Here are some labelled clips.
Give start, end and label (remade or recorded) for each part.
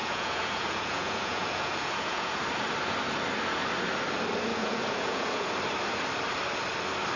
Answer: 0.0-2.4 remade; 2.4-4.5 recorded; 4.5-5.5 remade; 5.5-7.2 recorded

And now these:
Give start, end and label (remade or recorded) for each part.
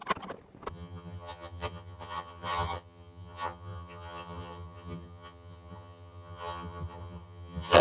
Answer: 0.0-0.7 recorded; 0.7-7.8 remade